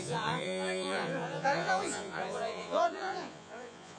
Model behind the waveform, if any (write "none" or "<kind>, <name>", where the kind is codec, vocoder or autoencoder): vocoder, Vocos